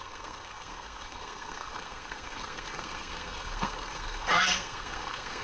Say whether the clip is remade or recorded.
remade